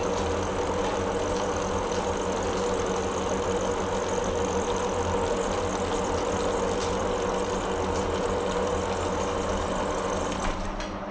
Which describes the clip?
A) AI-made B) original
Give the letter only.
B